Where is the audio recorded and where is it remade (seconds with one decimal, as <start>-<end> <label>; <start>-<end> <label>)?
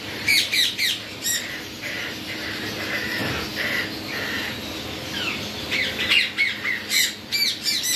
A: 0.0-3.2 remade; 3.2-7.3 recorded; 7.3-8.0 remade